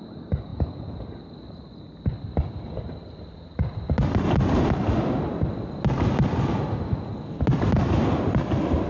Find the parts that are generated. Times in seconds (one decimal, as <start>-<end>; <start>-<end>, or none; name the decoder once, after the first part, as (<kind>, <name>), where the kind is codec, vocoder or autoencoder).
none